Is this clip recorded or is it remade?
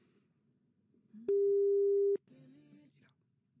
recorded